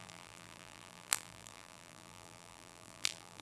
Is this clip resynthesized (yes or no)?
yes